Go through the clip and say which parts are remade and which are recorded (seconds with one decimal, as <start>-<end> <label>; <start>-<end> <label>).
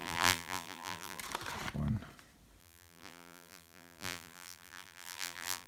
0.0-1.2 remade; 1.2-2.6 recorded; 2.6-5.7 remade